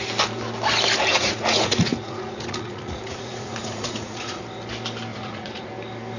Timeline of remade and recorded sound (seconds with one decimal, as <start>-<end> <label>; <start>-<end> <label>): 0.0-1.1 recorded; 1.1-4.4 remade; 4.4-5.1 recorded; 5.1-5.7 remade; 5.7-6.2 recorded